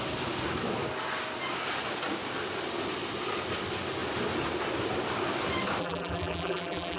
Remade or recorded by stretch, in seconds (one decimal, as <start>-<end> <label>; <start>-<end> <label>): 0.0-5.8 recorded; 5.8-7.0 remade